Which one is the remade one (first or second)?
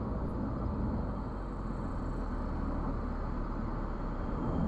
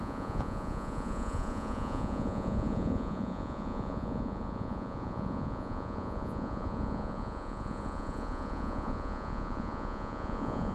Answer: second